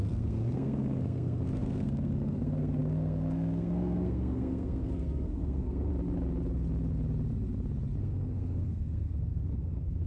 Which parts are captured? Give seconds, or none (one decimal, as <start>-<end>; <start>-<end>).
5.9-8.0